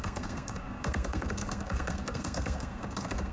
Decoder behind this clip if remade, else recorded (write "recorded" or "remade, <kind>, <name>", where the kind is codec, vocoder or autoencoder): remade, codec, SNAC